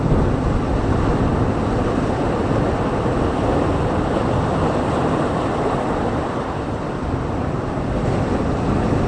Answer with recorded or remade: recorded